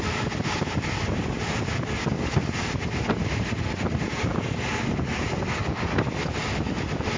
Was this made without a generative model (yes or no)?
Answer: yes